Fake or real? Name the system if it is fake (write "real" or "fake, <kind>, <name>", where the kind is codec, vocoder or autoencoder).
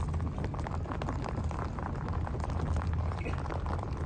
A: real